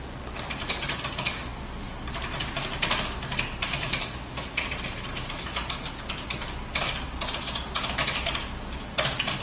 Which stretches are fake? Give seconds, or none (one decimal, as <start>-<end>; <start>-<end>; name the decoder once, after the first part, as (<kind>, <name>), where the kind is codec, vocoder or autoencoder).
1.5-2.1 (vocoder, BigVGAN v2)